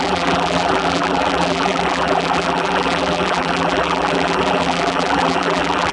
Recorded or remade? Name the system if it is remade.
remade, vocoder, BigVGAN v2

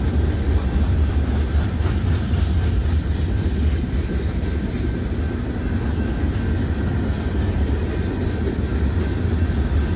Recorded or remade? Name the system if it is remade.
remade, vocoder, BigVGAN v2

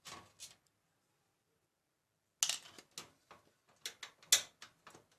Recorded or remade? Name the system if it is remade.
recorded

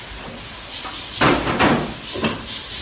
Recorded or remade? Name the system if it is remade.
recorded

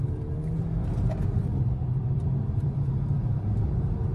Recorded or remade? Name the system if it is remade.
remade, vocoder, BigVGAN v2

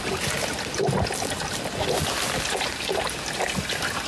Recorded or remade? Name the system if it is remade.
recorded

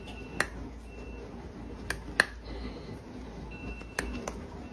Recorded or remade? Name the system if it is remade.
recorded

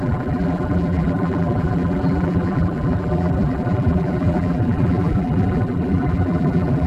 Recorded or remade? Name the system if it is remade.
remade, vocoder, BigVGAN v2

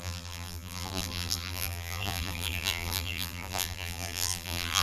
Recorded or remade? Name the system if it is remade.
remade, vocoder, BigVGAN v2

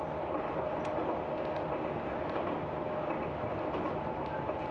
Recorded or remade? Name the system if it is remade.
recorded